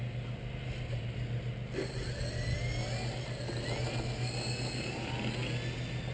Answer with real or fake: real